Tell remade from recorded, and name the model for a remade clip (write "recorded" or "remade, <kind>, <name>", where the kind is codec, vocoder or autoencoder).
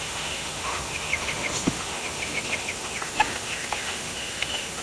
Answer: remade, autoencoder, DAC-VAE